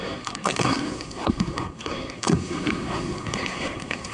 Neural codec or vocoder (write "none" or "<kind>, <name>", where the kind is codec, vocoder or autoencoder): codec, SNAC